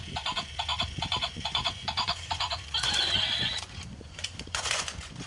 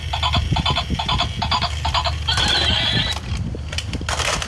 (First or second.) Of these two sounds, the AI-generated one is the first